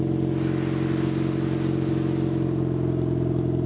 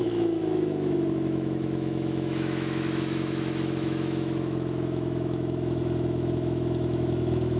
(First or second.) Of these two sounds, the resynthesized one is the second